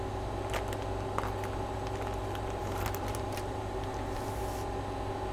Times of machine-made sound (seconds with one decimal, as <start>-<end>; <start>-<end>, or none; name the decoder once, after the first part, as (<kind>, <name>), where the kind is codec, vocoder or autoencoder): 2.6-4.4 (vocoder, BigVGAN v2)

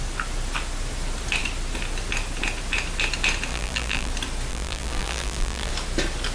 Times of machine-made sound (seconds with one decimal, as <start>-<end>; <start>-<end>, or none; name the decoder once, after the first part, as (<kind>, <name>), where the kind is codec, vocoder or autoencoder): 3.5-4.1 (vocoder, BigVGAN v2); 4.5-5.7